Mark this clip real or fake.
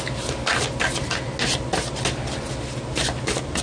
real